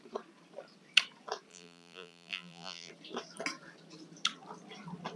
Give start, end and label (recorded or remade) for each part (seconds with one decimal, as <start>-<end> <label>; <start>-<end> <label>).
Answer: 0.0-1.5 recorded; 1.5-2.9 remade; 2.9-5.2 recorded